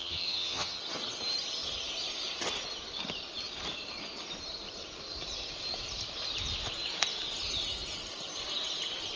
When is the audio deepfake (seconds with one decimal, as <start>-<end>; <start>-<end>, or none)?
0.0-0.8